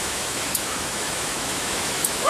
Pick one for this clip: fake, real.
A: fake